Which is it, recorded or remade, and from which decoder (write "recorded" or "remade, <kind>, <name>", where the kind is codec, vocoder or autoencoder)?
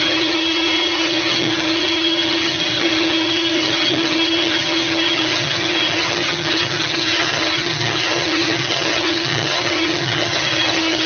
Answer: remade, vocoder, HiFi-GAN